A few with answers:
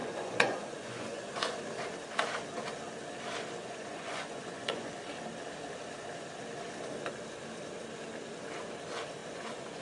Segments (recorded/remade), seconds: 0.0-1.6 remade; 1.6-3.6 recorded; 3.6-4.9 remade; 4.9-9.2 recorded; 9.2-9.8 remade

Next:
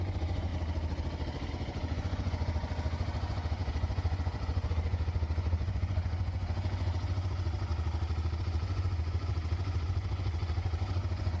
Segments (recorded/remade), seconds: 0.0-0.5 remade; 0.5-1.5 recorded; 1.5-7.7 remade; 7.7-8.4 recorded; 8.4-11.4 remade

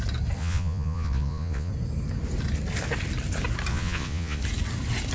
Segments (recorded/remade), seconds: 0.0-0.4 recorded; 0.4-1.7 remade; 1.7-3.7 recorded; 3.7-4.4 remade; 4.4-5.1 recorded

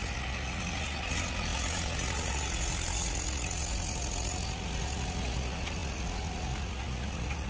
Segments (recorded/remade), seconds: 0.0-7.5 remade

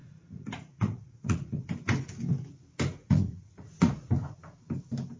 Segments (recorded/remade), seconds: 0.0-1.6 remade; 1.6-3.0 recorded; 3.0-4.1 remade; 4.1-5.2 recorded

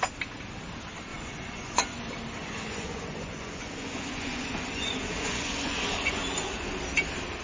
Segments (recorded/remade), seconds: 0.0-1.1 recorded; 1.1-1.8 remade; 1.8-2.4 recorded; 2.4-6.8 remade; 6.8-7.4 recorded

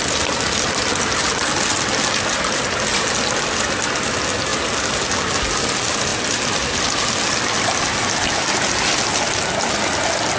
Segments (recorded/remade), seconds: 0.0-10.4 recorded